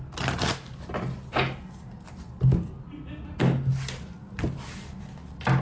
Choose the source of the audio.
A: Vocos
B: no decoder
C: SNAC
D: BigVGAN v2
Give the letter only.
B